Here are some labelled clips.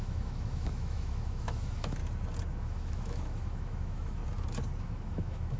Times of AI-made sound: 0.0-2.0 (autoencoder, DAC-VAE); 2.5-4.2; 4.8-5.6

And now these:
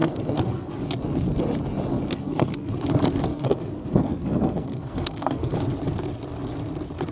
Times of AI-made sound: 0.0-0.7 (codec, SNAC); 1.9-2.7; 3.3-5.5

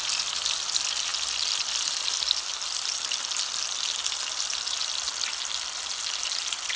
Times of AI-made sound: none

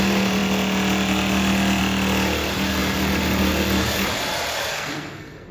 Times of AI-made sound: 4.7-5.5 (codec, SNAC)

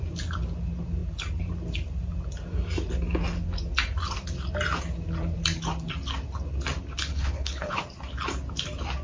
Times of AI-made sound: 7.1-7.8 (codec, HILCodec)